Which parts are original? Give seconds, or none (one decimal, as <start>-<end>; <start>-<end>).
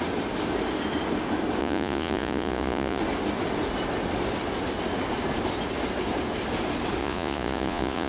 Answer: 0.0-1.6; 3.0-7.0